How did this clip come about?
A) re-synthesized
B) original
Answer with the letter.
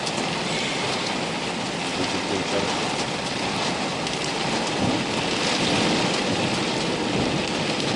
B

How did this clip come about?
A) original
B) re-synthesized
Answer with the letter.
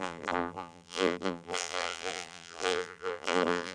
B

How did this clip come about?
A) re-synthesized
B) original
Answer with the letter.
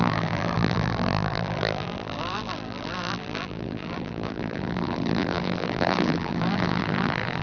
A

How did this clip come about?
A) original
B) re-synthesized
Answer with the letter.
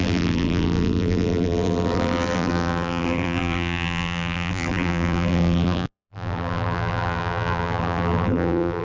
B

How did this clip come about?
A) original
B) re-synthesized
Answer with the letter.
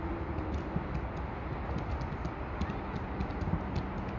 A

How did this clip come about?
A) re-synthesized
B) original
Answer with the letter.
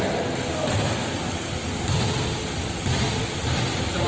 B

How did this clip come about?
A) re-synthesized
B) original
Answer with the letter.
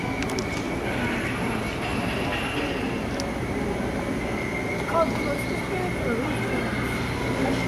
B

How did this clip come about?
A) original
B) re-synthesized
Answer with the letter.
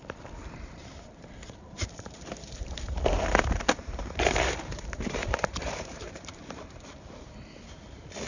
B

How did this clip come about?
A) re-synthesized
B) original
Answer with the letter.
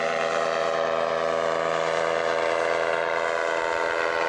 A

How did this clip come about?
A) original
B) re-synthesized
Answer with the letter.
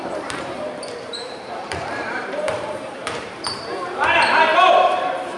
B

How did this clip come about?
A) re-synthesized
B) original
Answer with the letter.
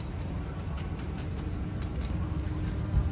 B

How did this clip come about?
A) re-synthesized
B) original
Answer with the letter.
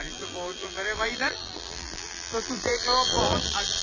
A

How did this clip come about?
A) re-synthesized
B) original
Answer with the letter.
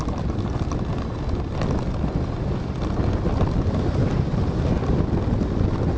B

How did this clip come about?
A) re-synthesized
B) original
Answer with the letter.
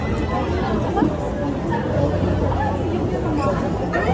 B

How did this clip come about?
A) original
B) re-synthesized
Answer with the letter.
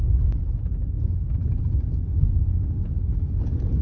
A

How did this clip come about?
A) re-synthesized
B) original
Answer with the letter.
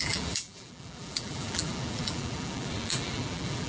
A